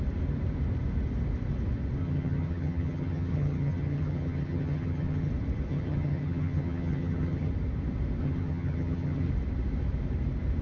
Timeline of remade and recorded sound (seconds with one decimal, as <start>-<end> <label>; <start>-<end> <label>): 0.0-2.0 recorded; 2.0-5.3 remade; 5.3-5.7 recorded; 5.7-7.5 remade; 7.5-8.2 recorded; 8.2-9.3 remade; 9.3-10.6 recorded